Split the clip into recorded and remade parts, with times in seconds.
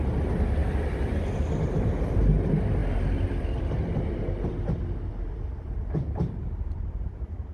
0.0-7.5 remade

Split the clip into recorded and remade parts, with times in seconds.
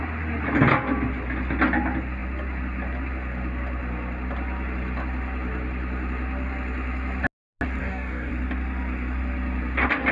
0.0-7.8 recorded; 7.8-8.3 remade; 8.3-10.1 recorded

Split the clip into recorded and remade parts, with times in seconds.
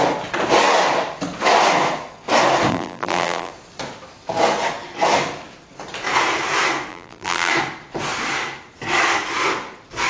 0.0-2.7 recorded; 2.7-3.5 remade; 3.5-6.9 recorded; 6.9-7.5 remade; 7.5-10.1 recorded